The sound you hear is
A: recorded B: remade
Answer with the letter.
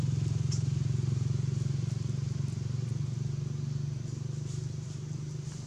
A